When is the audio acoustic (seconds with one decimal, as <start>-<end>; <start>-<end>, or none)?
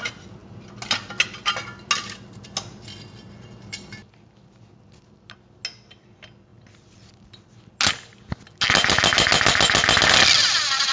0.0-10.9